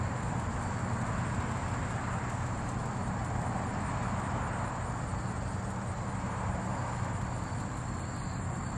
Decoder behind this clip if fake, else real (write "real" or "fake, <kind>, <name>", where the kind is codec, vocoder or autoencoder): real